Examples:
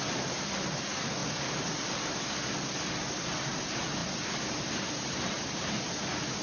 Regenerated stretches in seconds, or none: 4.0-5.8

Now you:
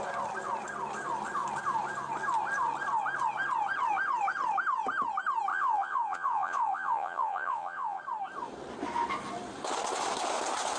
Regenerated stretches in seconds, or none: 5.5-8.0

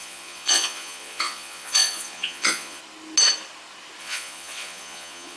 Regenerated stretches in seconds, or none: 0.0-2.8; 4.0-5.4